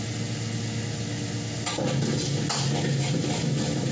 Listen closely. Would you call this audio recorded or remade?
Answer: recorded